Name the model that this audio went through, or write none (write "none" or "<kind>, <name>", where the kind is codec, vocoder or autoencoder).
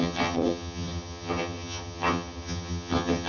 vocoder, HiFi-GAN